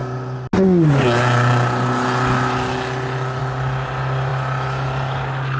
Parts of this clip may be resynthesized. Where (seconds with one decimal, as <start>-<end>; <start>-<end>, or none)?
none